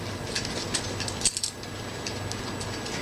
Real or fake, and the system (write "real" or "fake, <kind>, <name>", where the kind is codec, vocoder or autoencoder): real